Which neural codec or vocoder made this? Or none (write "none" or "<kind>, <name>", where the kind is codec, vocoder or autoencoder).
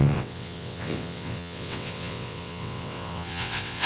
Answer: vocoder, WaveNeXt